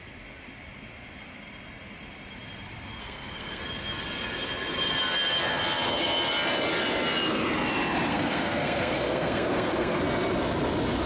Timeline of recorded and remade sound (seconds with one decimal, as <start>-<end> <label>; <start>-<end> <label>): 0.0-3.0 recorded; 3.0-3.6 remade; 3.6-8.1 recorded; 8.1-10.0 remade; 10.0-11.1 recorded